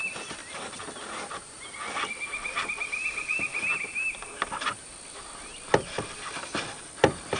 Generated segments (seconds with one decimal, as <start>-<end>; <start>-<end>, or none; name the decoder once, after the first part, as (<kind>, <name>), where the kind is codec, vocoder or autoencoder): 0.4-1.9 (vocoder, BigVGAN v2); 3.5-4.9